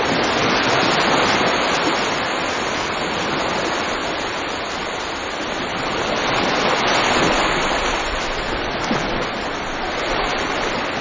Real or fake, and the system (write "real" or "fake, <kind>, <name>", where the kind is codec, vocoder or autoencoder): real